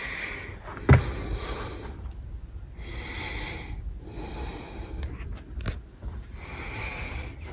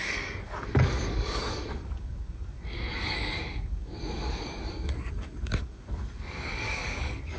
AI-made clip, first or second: second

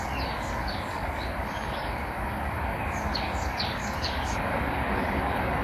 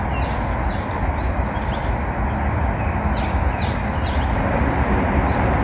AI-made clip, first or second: first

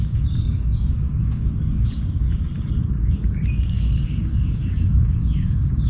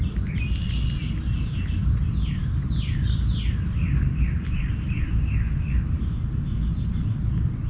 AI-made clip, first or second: first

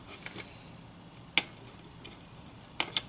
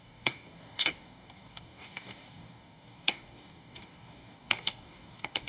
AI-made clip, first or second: second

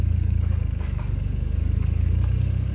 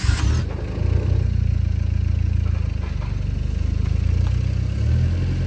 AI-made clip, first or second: first